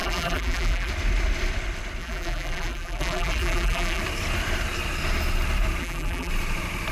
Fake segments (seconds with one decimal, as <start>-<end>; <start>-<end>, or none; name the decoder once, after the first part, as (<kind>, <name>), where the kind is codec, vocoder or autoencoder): 0.0-0.9 (vocoder, BigVGAN v2); 2.0-4.0; 5.8-6.3